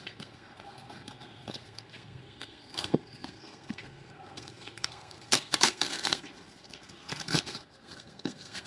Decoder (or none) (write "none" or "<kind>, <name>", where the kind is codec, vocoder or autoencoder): codec, SNAC